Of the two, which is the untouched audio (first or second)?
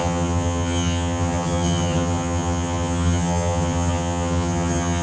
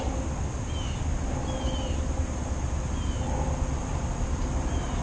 second